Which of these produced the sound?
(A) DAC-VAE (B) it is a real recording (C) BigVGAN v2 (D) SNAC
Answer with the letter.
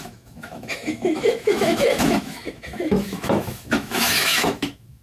A